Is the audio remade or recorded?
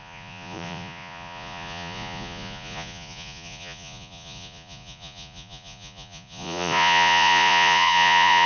remade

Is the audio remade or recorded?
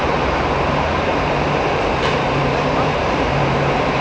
remade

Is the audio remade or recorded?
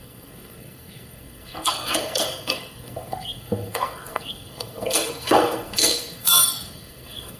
remade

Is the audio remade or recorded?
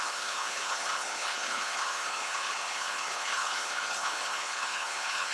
remade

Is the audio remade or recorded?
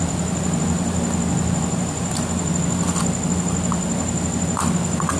recorded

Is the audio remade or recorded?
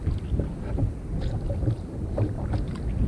recorded